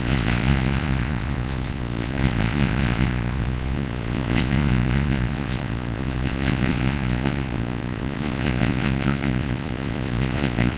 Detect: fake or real fake